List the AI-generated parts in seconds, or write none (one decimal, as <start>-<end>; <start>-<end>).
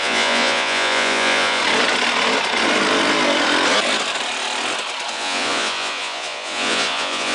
0.0-1.6; 5.1-7.3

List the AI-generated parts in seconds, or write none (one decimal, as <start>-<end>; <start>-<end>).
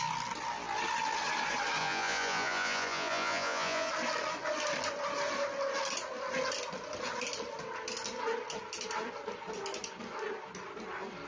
1.8-3.9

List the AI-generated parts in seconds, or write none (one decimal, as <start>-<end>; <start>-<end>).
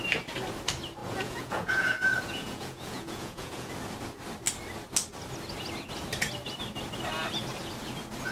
1.0-3.7